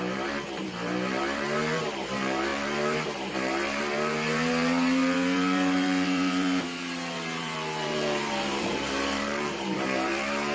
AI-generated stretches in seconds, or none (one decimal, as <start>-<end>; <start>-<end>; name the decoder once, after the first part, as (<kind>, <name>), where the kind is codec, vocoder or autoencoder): 0.0-10.5 (vocoder, BigVGAN v2)